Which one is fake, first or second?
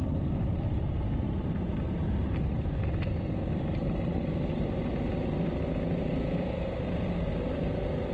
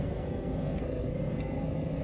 second